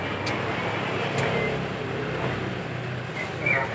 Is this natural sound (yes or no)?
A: yes